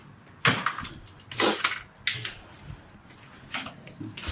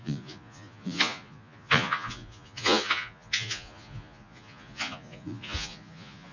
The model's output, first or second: second